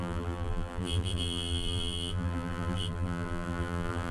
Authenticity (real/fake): fake